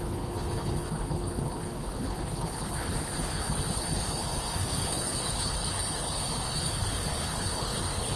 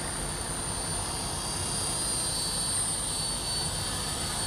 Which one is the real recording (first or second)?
second